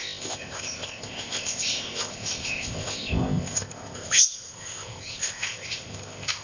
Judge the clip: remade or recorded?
remade